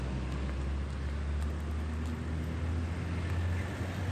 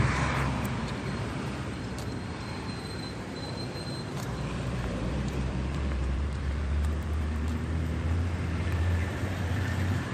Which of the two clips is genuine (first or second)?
first